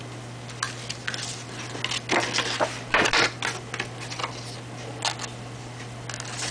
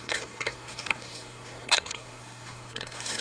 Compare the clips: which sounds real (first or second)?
first